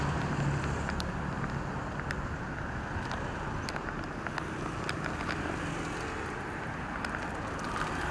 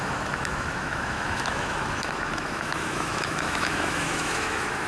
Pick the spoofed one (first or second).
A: second